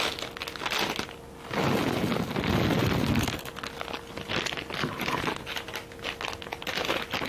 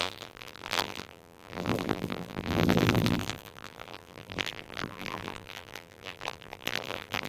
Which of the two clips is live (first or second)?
first